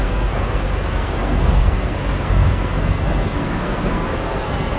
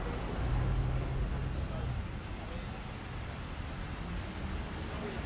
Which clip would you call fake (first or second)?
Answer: first